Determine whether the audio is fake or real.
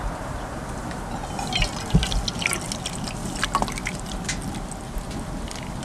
real